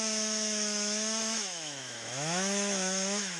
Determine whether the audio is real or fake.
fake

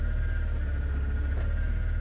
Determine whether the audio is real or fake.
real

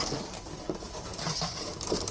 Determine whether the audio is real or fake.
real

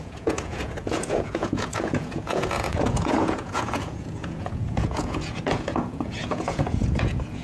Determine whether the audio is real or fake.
fake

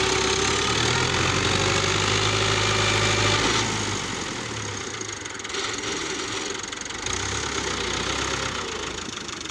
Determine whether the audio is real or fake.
real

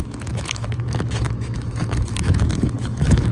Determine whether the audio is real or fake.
fake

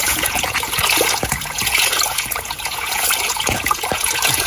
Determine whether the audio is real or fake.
fake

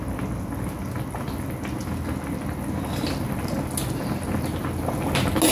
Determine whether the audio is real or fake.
real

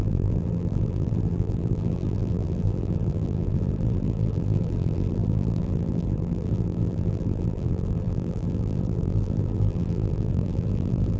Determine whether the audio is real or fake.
fake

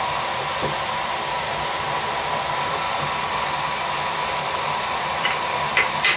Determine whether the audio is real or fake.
fake